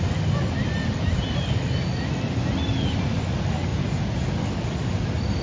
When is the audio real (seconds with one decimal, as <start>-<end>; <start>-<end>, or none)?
0.0-3.7; 4.4-5.4